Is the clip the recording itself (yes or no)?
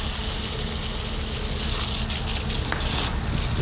yes